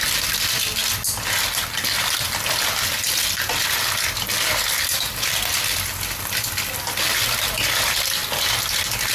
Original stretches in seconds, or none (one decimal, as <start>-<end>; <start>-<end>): 0.0-9.1